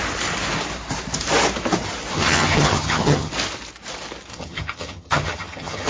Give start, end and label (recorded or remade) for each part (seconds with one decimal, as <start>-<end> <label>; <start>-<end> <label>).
0.0-2.1 recorded; 2.1-3.3 remade; 3.3-4.3 recorded; 4.3-5.9 remade